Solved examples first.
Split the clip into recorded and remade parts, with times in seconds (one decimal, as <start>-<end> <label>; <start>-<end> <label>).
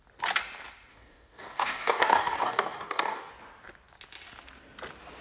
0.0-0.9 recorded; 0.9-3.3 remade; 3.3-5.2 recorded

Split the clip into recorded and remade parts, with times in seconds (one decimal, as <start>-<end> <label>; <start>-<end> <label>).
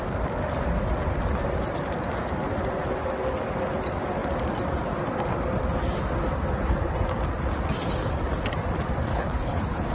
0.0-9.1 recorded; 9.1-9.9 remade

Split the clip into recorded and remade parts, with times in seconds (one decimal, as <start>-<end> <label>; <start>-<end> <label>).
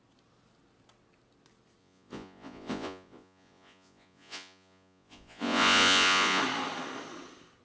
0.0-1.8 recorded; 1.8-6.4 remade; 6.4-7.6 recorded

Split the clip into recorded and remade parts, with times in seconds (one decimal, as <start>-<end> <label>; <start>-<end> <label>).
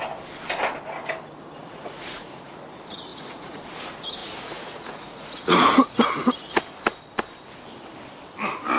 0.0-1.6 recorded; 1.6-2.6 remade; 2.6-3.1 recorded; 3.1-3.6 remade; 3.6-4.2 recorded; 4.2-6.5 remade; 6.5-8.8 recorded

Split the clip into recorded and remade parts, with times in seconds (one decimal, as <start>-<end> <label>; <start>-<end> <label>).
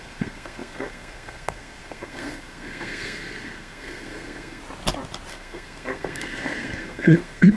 0.0-4.6 remade; 4.6-5.3 recorded; 5.3-7.6 remade